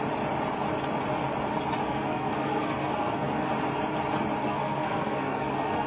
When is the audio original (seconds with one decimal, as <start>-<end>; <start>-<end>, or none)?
0.0-1.8; 3.5-4.4